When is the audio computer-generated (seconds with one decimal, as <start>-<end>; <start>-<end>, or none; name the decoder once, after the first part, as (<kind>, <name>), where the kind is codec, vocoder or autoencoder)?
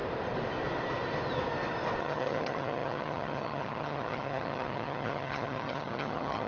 2.0-6.5 (vocoder, HiFi-GAN)